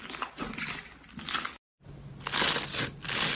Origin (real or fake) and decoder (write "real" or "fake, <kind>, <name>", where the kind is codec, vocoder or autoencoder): real